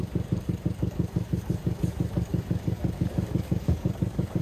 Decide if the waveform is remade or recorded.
remade